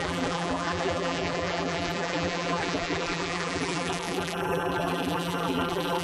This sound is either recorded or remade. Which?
remade